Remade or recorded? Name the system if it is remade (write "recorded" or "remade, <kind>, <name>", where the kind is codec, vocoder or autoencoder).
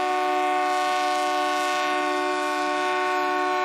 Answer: recorded